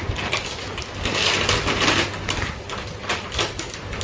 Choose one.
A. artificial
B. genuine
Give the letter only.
B